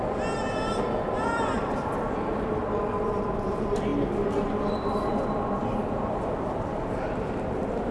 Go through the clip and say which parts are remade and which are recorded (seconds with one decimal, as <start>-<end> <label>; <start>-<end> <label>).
0.0-2.6 remade; 2.6-3.5 recorded; 3.5-3.9 remade; 3.9-4.8 recorded; 4.8-7.9 remade